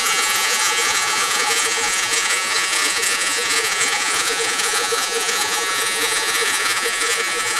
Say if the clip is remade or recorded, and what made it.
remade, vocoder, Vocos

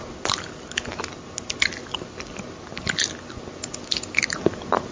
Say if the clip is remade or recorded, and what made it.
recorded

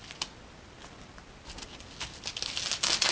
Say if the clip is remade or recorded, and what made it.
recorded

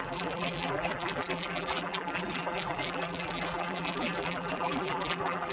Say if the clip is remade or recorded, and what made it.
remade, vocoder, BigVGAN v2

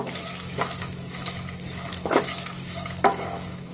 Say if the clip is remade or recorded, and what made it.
remade, autoencoder, DAC-VAE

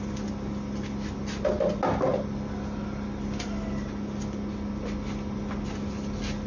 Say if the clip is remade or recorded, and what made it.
recorded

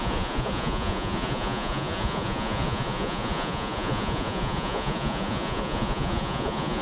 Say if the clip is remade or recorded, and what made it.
remade, vocoder, Vocos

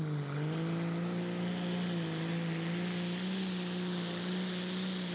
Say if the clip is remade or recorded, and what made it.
recorded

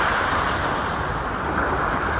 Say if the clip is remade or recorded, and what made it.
recorded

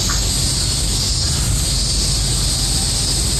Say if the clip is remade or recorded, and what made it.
recorded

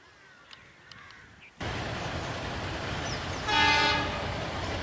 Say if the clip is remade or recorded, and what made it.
recorded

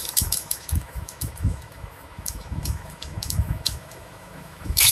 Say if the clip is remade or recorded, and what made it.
remade, autoencoder, DAC-VAE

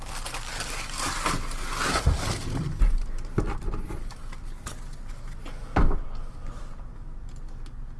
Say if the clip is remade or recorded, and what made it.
recorded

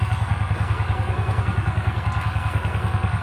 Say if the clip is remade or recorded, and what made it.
remade, codec, SNAC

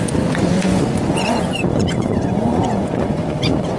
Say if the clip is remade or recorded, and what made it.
remade, vocoder, Vocos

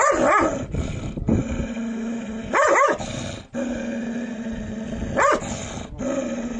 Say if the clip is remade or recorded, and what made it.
recorded